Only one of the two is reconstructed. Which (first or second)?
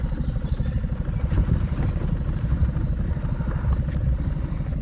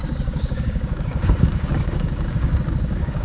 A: second